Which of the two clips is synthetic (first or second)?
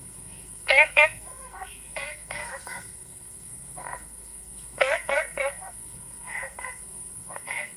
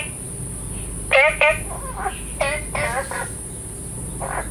first